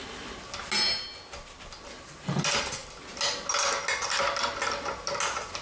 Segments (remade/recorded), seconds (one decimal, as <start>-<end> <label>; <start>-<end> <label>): 0.0-5.6 recorded